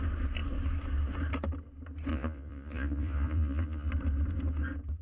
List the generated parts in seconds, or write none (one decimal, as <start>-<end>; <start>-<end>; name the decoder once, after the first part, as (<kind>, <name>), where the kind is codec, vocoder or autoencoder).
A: 2.1-3.9 (vocoder, Vocos)